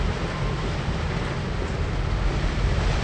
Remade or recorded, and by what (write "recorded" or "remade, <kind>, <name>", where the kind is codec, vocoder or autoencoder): recorded